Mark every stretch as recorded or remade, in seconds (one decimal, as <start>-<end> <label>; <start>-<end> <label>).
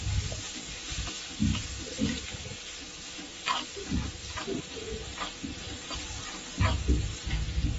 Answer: 0.0-7.8 recorded